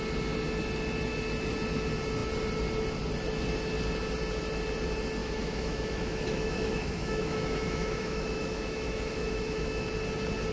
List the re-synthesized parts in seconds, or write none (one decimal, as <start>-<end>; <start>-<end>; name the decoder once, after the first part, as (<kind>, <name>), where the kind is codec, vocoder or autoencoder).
5.2-9.9 (autoencoder, DAC-VAE)